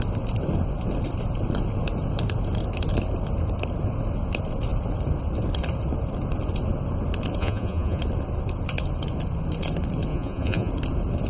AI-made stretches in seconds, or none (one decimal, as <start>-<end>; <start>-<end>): 7.4-8.0; 10.1-10.7